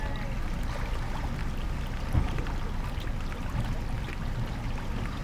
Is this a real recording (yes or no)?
yes